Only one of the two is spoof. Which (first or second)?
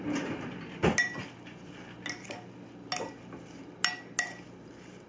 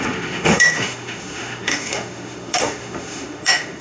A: second